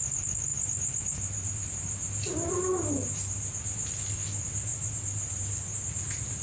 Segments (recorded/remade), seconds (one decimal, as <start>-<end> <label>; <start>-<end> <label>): 0.0-0.5 recorded; 0.5-3.9 remade; 3.9-4.7 recorded; 4.7-5.9 remade; 5.9-6.4 recorded